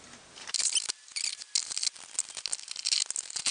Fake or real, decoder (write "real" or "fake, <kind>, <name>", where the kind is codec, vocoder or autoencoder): real